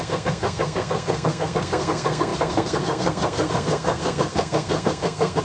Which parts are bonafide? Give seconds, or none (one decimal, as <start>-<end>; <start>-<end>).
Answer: none